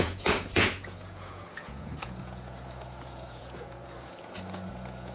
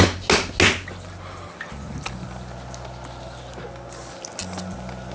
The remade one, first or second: first